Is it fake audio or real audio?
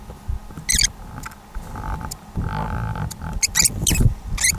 real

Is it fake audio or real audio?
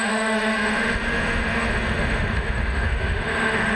fake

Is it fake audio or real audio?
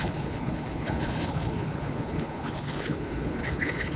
fake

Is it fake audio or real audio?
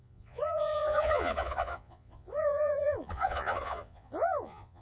fake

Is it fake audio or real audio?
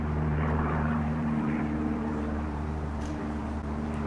fake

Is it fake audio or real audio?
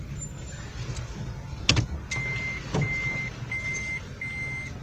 real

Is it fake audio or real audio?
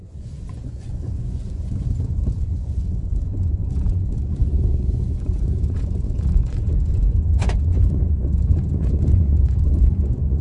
fake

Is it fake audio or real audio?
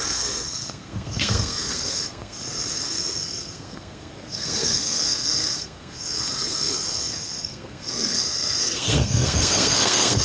fake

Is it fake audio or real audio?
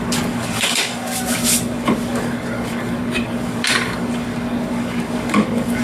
fake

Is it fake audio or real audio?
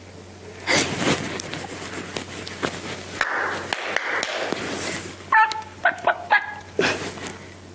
real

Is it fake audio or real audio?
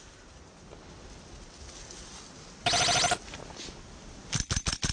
real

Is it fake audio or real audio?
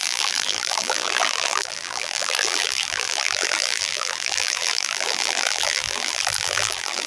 fake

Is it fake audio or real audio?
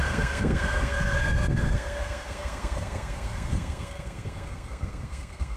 fake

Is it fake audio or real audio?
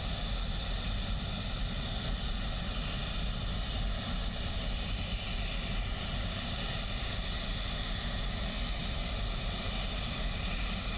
real